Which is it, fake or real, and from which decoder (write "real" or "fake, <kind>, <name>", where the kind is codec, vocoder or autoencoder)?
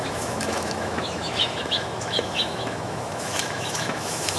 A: fake, autoencoder, DAC-VAE